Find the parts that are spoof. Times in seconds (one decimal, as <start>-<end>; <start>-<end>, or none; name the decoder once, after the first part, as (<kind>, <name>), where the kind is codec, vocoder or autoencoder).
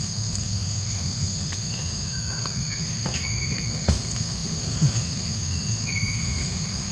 0.0-6.9 (autoencoder, DAC-VAE)